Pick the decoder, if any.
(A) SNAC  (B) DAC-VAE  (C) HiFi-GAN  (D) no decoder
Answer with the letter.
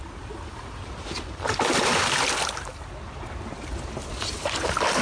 D